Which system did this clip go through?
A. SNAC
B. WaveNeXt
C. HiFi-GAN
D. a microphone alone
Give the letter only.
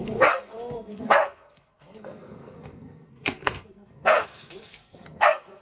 A